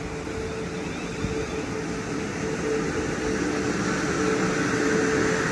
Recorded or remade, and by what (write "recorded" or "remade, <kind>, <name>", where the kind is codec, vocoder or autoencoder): recorded